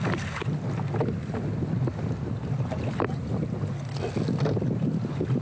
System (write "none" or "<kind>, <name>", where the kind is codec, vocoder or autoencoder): none